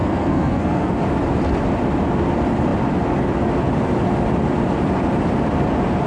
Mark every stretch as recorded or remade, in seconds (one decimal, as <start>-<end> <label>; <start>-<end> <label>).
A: 0.0-0.9 remade; 0.9-6.1 recorded